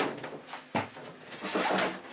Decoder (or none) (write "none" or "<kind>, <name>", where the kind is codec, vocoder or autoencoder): none